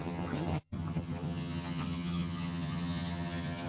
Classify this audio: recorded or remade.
remade